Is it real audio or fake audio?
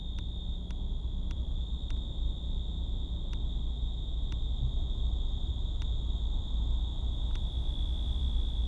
real